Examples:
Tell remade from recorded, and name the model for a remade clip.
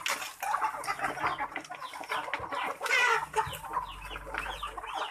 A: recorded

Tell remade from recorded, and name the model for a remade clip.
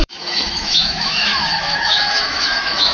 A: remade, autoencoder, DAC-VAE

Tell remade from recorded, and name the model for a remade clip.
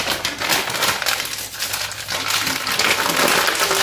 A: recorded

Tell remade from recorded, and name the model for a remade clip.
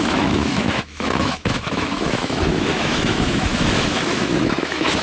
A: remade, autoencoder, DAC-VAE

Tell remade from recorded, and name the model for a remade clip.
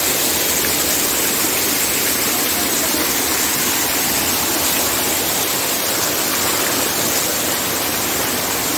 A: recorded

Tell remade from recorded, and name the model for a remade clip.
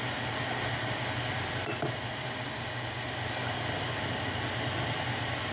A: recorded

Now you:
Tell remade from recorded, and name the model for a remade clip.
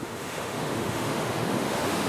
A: remade, autoencoder, DAC-VAE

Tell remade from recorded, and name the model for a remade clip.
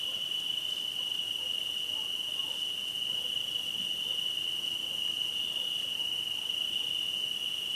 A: recorded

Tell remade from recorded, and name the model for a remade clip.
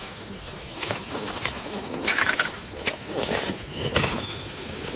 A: remade, autoencoder, DAC-VAE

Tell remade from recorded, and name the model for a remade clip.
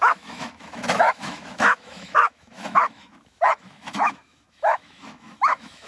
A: remade, autoencoder, DAC-VAE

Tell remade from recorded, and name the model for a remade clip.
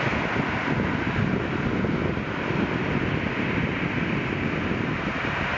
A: recorded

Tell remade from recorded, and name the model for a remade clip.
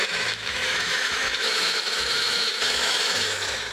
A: remade, autoencoder, DAC-VAE